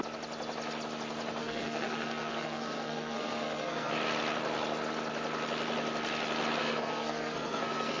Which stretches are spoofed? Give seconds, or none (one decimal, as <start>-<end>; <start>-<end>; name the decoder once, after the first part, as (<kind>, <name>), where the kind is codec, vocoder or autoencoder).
1.4-3.9 (codec, SNAC); 6.6-8.0